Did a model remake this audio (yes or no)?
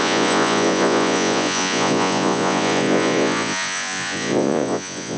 yes